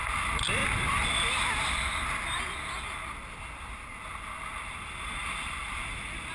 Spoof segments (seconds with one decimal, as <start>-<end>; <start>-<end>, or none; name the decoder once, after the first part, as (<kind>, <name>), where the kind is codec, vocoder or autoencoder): none